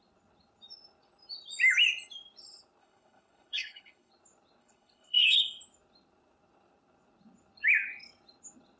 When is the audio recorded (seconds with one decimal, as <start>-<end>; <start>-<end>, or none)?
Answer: 0.0-2.8; 4.1-4.6; 5.4-8.8